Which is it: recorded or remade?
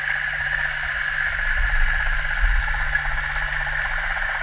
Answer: recorded